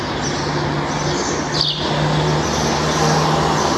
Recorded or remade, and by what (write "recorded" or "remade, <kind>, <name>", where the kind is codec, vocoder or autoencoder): recorded